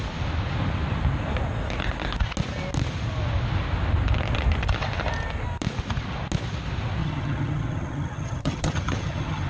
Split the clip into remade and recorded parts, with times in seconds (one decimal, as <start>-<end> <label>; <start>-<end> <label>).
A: 0.0-7.0 recorded; 7.0-9.5 remade